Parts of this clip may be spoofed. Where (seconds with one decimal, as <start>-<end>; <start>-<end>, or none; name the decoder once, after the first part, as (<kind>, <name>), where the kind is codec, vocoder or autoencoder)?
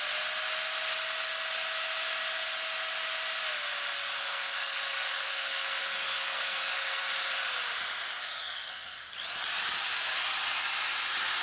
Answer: 4.2-7.3 (codec, SNAC); 8.2-9.1